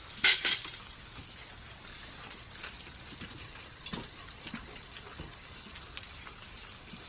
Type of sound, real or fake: real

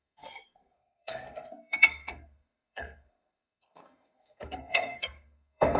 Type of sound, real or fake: fake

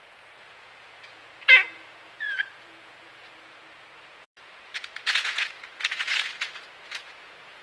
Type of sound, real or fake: fake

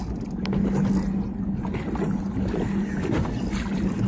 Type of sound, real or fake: real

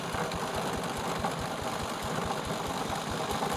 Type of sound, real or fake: real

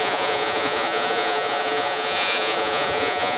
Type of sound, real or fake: fake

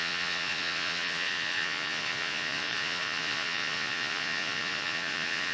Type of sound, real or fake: fake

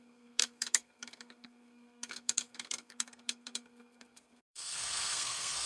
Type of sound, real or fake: fake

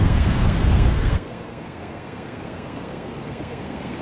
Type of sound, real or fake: fake